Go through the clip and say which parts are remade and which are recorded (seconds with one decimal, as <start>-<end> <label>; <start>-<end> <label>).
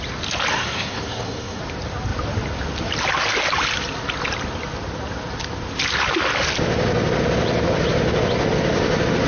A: 0.0-0.5 recorded; 0.5-1.6 remade; 1.6-9.3 recorded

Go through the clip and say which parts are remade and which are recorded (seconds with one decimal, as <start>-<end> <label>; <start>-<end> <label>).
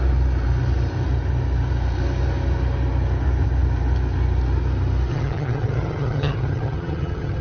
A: 0.0-5.1 recorded; 5.1-7.4 remade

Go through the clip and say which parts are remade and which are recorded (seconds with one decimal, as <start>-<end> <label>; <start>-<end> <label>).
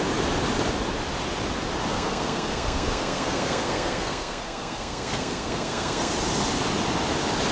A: 0.0-1.9 recorded; 1.9-6.1 remade; 6.1-7.5 recorded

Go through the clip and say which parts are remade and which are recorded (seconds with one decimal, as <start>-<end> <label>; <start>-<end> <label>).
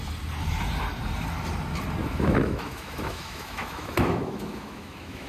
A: 0.0-2.0 recorded; 2.0-5.3 remade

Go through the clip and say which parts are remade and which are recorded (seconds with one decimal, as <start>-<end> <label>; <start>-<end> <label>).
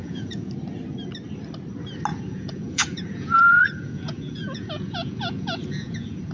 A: 0.0-0.5 remade; 0.5-2.1 recorded; 2.1-6.3 remade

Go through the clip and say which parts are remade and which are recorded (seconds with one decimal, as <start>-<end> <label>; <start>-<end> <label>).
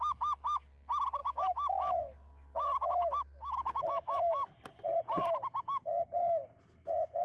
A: 0.0-1.2 recorded; 1.2-4.5 remade; 4.5-7.2 recorded